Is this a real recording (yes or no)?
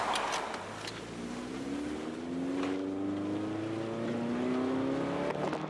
yes